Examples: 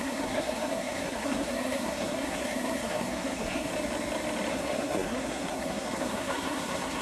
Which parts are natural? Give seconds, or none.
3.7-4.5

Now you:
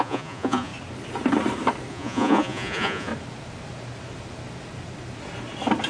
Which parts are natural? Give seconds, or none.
0.7-1.9; 3.1-5.9